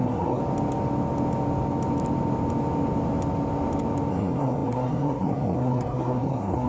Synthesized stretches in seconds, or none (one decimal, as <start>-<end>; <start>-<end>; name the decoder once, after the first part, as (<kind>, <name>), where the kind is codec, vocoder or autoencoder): 0.0-0.4 (codec, SNAC); 4.1-6.7